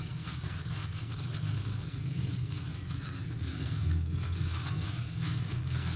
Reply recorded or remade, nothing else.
remade